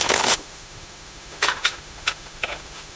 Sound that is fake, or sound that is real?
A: fake